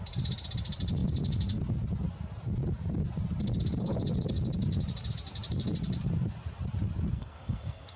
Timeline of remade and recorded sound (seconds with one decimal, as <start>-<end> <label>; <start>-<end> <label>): 0.0-7.1 recorded; 7.1-8.0 remade